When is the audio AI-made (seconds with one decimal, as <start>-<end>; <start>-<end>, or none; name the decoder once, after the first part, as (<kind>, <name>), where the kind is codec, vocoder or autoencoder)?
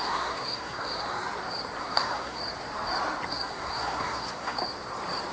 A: 0.0-1.0 (codec, SNAC); 1.8-2.4; 3.3-4.6